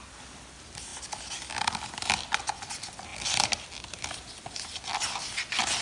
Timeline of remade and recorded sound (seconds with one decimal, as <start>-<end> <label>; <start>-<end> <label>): 0.0-5.8 recorded